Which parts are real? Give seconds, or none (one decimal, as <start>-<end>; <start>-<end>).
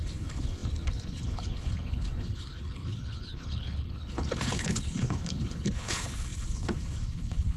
none